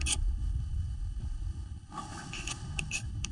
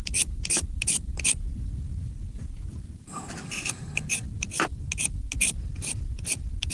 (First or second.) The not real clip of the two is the first